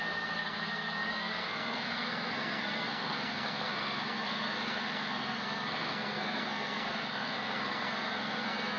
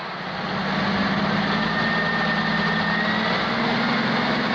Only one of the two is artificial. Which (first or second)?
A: first